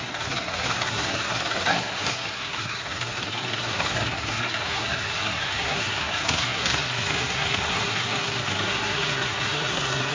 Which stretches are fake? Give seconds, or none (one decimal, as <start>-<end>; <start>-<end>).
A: 0.0-10.1

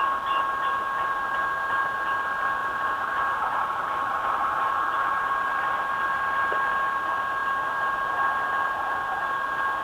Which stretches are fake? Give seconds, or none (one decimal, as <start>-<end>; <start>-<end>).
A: 2.6-4.7

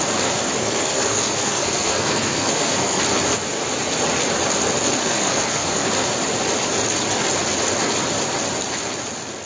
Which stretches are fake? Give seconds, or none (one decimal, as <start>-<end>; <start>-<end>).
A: 0.6-3.0; 5.0-5.9

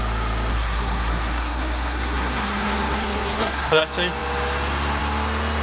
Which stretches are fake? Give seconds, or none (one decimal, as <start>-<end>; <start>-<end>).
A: 0.5-3.8

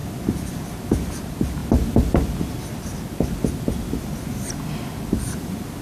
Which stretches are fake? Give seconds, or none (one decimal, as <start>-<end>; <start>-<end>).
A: 0.0-1.6; 4.2-5.8

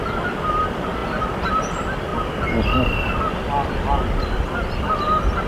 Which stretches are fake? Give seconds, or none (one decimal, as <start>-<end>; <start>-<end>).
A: none

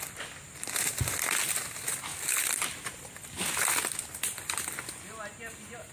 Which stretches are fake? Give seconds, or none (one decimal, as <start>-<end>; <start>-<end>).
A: none

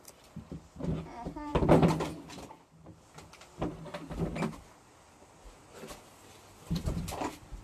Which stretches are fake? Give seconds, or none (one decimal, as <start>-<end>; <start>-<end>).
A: none